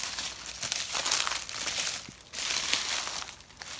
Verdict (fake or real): real